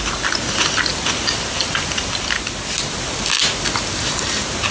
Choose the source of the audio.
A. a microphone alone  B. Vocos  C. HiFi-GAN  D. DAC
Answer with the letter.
A